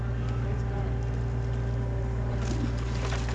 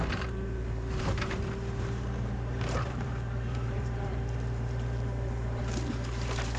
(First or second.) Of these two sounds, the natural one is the first